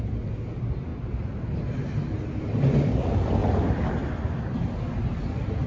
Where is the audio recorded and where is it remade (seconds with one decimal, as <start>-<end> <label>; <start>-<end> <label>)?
0.0-5.7 recorded